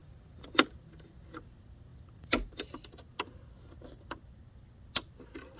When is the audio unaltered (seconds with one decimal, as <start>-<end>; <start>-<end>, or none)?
1.1-1.9; 2.6-5.6